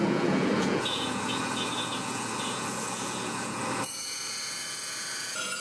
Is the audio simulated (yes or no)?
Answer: yes